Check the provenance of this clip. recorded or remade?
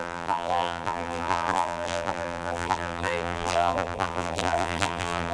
remade